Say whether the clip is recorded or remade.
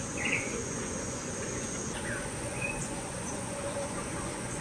remade